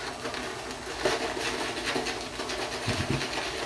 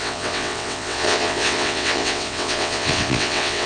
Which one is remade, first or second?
second